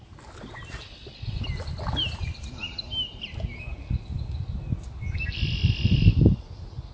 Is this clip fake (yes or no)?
no